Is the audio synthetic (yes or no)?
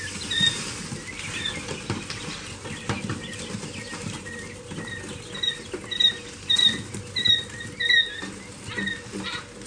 no